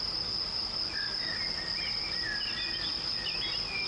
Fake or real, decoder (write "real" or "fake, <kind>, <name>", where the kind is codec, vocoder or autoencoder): real